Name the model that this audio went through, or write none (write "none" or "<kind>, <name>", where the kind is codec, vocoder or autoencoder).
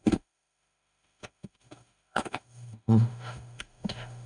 autoencoder, DAC-VAE